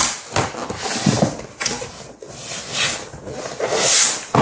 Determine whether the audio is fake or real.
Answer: real